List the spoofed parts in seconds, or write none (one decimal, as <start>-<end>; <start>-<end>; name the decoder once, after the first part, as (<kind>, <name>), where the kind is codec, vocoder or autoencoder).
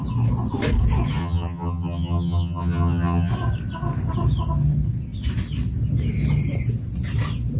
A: 1.2-3.3 (vocoder, HiFi-GAN)